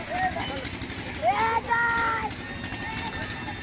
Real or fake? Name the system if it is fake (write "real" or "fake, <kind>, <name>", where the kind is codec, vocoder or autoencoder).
real